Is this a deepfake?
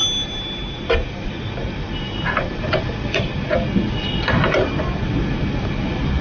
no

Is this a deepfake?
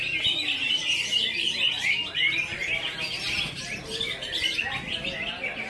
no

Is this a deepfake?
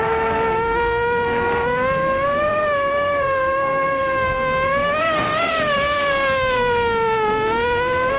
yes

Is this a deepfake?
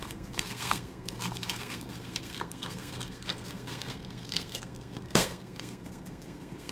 yes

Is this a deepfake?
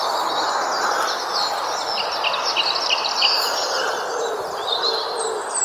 no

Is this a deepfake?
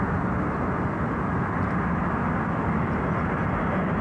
no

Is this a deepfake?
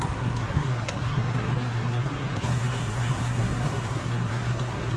yes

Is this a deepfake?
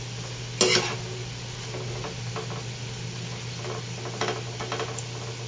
no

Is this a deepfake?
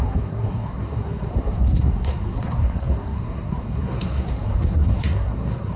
yes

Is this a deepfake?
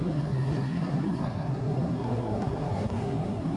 yes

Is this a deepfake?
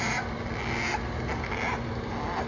no